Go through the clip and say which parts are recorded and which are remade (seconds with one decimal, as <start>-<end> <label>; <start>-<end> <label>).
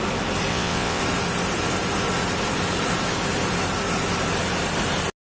0.0-0.5 recorded; 0.5-1.0 remade; 1.0-5.2 recorded